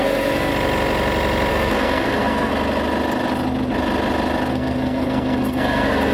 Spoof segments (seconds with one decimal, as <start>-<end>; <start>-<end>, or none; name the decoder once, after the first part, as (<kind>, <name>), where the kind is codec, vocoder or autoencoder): 0.0-0.5 (codec, SNAC); 1.5-2.5; 4.5-6.1